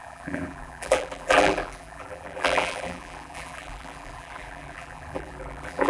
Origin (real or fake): fake